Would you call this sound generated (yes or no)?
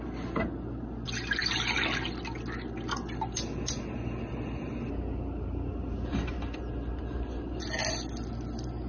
no